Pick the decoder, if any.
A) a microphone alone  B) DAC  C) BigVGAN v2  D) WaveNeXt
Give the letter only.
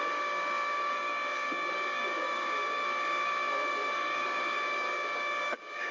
B